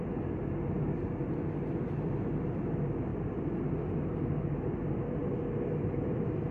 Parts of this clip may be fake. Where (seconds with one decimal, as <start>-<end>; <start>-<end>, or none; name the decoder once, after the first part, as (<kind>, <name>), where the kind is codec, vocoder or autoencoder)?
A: 3.1-3.8 (vocoder, BigVGAN v2)